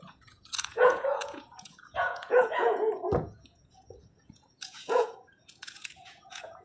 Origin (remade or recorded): remade